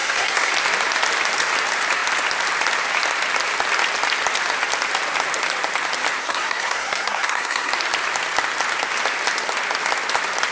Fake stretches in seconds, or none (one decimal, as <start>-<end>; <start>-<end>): 0.0-0.5; 6.2-7.7